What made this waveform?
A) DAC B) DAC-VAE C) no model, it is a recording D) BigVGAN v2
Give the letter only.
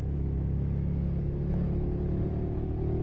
B